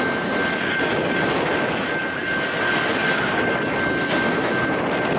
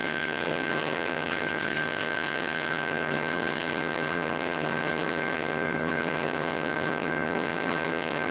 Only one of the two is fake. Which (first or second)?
second